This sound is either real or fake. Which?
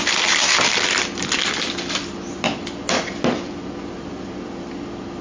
real